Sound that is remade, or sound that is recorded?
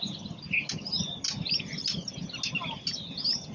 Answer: recorded